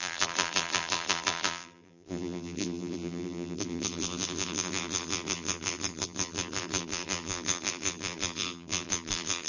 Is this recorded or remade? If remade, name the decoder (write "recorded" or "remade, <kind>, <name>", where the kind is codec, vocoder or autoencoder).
remade, vocoder, BigVGAN v2